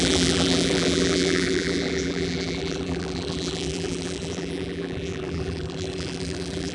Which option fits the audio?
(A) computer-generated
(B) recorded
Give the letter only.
A